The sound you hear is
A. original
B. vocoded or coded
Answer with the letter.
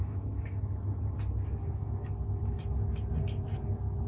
A